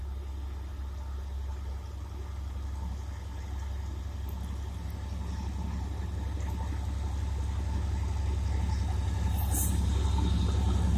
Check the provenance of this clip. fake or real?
real